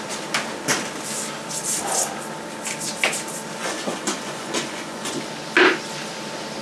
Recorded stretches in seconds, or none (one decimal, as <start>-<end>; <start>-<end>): 0.0-3.6; 5.2-6.6